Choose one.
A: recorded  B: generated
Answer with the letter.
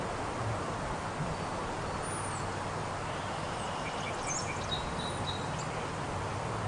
A